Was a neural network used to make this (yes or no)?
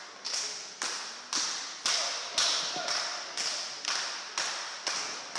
no